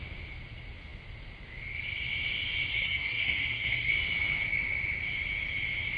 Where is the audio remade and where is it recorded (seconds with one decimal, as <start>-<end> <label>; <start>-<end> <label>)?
0.0-2.7 recorded; 2.7-3.9 remade; 3.9-6.0 recorded